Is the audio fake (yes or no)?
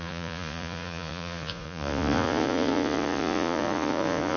yes